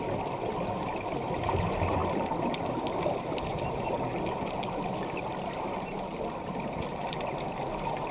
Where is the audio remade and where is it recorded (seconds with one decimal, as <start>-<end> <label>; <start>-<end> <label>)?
0.0-2.0 recorded; 2.0-5.0 remade; 5.0-8.1 recorded